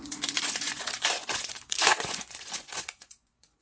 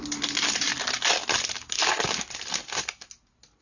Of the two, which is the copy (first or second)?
first